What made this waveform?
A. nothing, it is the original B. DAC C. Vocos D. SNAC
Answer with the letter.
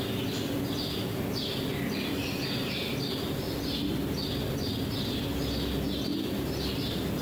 A